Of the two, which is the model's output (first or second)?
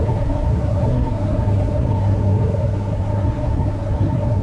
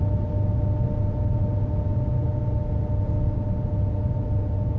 first